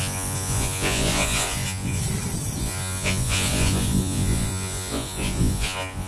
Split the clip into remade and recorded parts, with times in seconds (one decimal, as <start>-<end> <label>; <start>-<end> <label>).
0.0-2.0 remade; 2.0-2.6 recorded; 2.6-6.1 remade

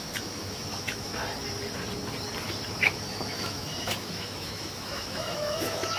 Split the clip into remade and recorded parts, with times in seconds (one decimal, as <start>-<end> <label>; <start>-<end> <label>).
0.0-1.2 remade; 1.2-2.8 recorded; 2.8-6.0 remade

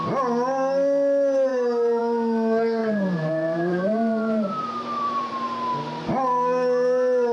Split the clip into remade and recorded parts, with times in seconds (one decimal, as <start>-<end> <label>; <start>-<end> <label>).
0.0-2.8 recorded; 2.8-5.3 remade; 5.3-7.3 recorded

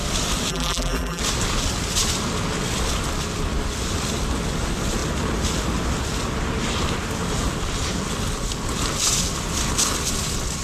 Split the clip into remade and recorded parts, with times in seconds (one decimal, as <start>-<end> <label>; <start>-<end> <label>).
0.0-0.5 recorded; 0.5-1.2 remade; 1.2-10.6 recorded

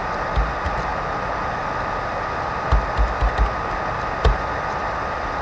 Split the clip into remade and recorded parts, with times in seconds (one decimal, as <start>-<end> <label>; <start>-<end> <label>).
0.0-5.4 recorded

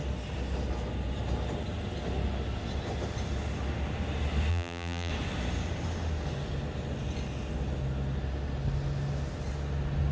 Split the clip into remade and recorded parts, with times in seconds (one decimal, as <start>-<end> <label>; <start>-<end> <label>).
0.0-4.5 recorded; 4.5-5.1 remade; 5.1-10.1 recorded